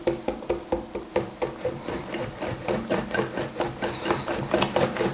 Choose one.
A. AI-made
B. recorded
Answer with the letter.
A